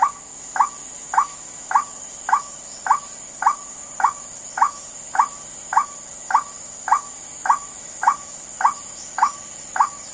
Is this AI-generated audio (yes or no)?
yes